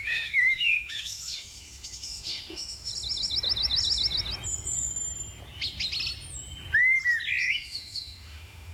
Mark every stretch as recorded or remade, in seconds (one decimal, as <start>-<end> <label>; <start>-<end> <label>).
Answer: 0.0-2.9 remade; 2.9-7.4 recorded; 7.4-8.7 remade